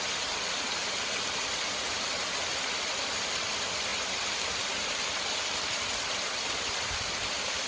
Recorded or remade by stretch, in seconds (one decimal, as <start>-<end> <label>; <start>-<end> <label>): 0.0-7.7 recorded